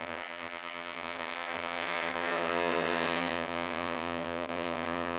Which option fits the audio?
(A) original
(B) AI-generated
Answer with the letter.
B